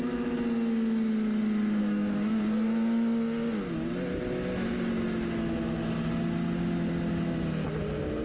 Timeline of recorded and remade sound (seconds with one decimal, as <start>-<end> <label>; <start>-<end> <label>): 0.0-1.8 recorded; 1.8-2.4 remade; 2.4-8.2 recorded